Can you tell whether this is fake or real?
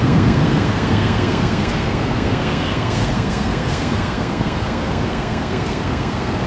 fake